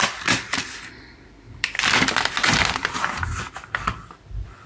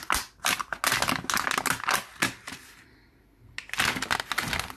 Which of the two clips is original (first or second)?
second